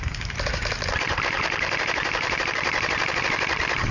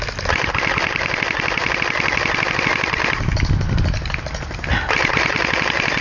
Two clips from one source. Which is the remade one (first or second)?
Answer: first